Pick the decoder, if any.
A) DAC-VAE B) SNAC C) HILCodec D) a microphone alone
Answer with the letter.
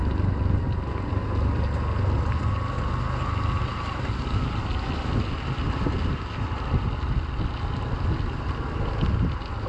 D